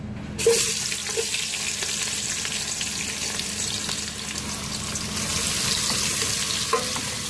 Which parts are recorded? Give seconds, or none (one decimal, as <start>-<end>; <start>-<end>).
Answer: 0.0-7.3